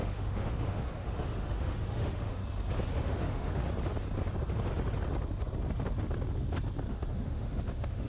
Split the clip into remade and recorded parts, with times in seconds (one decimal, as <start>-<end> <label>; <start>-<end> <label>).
0.0-2.4 remade; 2.4-2.9 recorded; 2.9-3.6 remade; 3.6-6.9 recorded; 6.9-8.1 remade